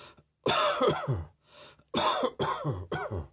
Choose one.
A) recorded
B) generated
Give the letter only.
A